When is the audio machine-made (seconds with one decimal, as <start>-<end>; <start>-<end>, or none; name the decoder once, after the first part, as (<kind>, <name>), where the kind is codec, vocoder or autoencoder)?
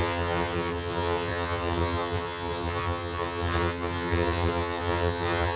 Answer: 0.0-5.6 (vocoder, HiFi-GAN)